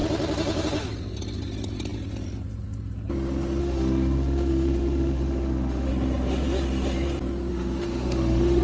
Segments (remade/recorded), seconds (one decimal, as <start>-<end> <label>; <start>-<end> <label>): 0.0-3.6 recorded; 3.6-5.9 remade; 5.9-7.5 recorded; 7.5-8.6 remade